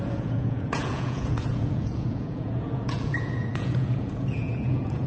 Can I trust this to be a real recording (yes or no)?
no